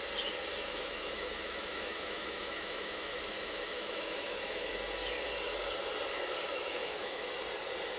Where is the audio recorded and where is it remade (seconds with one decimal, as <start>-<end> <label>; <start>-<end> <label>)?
0.0-0.5 recorded; 0.5-4.7 remade; 4.7-6.5 recorded; 6.5-7.3 remade; 7.3-8.0 recorded